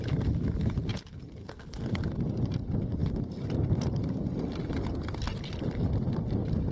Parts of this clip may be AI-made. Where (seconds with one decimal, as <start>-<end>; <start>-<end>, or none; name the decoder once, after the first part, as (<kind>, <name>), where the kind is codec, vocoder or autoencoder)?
1.4-2.0 (codec, SNAC)